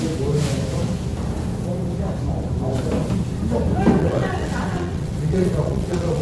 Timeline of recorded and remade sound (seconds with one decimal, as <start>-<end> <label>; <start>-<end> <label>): 0.0-4.0 recorded; 4.0-6.2 remade